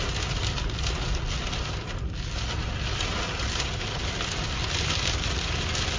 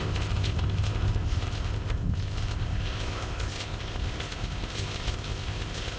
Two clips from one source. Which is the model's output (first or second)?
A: second